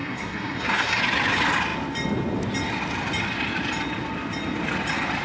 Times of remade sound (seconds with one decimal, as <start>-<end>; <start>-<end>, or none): 0.0-1.0